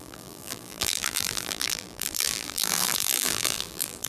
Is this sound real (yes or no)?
no